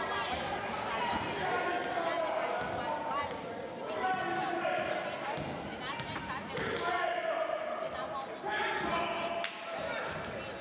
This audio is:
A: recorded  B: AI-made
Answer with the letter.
A